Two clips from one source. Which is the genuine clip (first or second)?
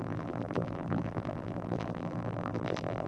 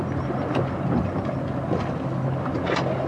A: second